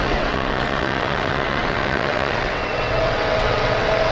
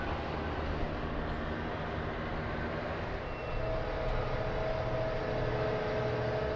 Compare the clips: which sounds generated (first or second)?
first